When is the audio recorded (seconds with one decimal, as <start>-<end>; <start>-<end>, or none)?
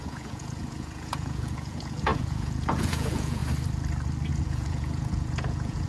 3.4-4.3